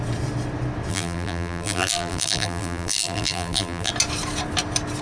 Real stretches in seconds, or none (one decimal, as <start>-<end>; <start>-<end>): 0.0-0.9; 3.9-5.0